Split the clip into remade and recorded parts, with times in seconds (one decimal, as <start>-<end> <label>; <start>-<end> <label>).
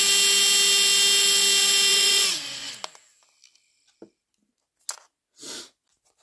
0.0-1.9 recorded; 1.9-2.7 remade; 2.7-6.2 recorded